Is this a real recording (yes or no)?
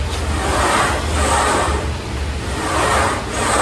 yes